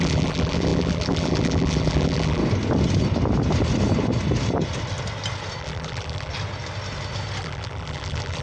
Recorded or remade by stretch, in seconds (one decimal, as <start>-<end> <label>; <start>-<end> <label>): 0.0-2.4 remade; 2.4-5.6 recorded; 5.6-6.3 remade; 6.3-7.4 recorded; 7.4-8.4 remade